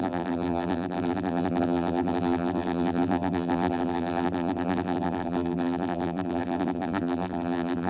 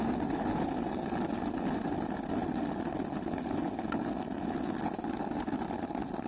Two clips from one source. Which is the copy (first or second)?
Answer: first